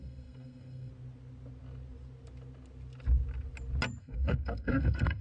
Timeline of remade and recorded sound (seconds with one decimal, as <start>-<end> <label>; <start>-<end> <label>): 0.0-0.9 remade; 0.9-4.0 recorded; 4.0-5.2 remade